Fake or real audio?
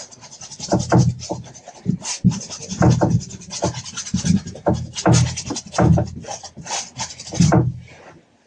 real